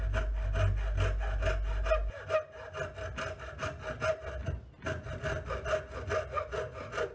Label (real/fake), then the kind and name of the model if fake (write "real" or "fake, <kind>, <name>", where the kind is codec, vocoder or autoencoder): real